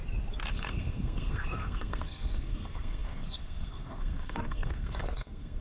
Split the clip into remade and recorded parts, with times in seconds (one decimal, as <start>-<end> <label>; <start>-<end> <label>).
0.0-0.5 recorded; 0.5-5.6 remade